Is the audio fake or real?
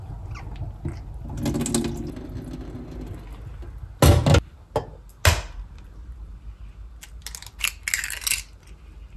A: real